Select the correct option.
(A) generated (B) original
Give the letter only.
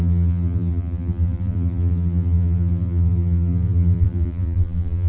A